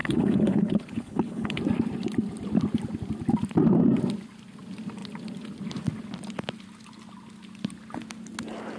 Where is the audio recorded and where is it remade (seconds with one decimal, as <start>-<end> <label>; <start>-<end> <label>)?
0.0-1.6 remade; 1.6-8.8 recorded